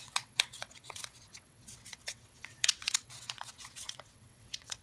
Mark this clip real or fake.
fake